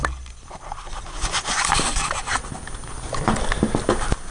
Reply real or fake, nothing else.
real